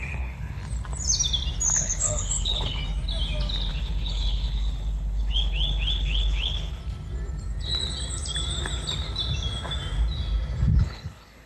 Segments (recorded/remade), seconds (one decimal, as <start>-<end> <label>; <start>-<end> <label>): 0.0-0.6 remade; 0.6-1.7 recorded; 1.7-2.8 remade; 2.8-3.7 recorded; 3.7-6.8 remade; 6.8-10.8 recorded; 10.8-11.5 remade